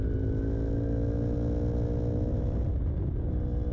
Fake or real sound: real